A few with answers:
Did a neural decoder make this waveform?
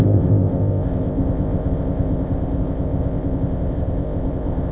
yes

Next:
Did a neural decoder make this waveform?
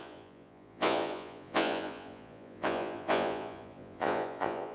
yes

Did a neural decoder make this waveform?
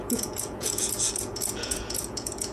yes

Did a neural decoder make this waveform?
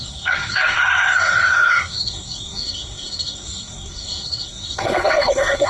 yes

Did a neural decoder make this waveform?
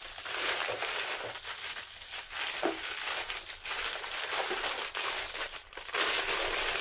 no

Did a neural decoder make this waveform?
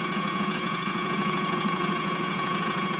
yes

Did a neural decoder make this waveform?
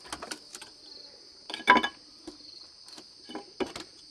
no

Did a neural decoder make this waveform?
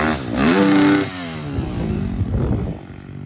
no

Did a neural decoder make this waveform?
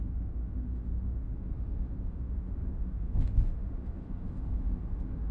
yes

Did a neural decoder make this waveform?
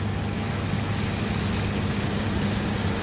no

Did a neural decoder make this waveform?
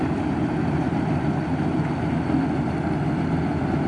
no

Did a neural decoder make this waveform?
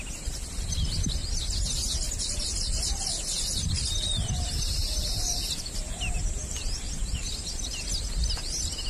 no